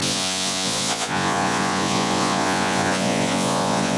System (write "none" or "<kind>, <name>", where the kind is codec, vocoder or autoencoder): vocoder, Vocos